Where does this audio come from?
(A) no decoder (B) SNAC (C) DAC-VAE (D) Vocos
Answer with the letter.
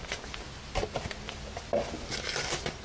A